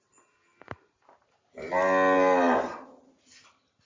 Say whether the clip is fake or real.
real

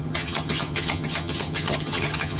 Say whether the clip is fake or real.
fake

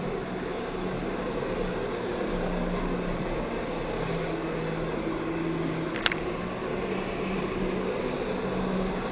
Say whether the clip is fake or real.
real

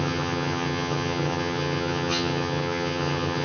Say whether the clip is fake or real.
fake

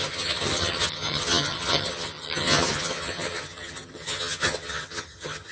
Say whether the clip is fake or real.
fake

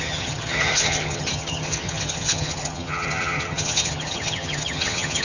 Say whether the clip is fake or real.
fake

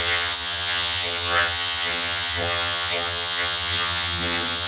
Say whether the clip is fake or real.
fake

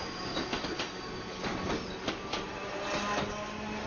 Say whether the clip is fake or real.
real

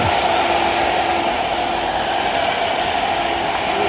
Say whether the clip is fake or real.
real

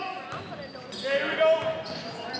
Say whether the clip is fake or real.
real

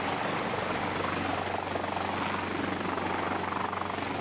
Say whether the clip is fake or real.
real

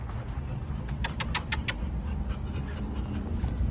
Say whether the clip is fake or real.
real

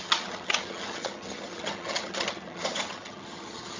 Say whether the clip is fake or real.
fake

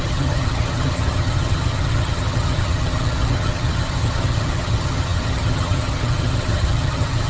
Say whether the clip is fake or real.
fake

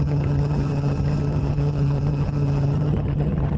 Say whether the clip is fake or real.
fake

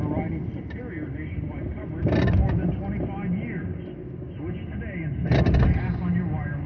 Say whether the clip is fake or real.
real